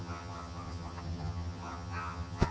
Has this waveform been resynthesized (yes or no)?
yes